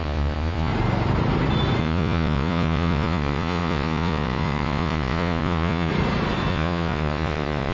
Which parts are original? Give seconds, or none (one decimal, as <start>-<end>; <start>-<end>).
0.7-1.8; 5.9-6.5